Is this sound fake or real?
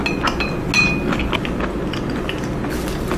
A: real